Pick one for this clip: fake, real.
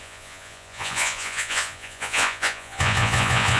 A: fake